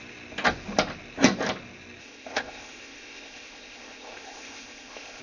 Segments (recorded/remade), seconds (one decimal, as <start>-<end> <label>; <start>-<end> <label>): 0.0-2.0 recorded; 2.0-5.2 remade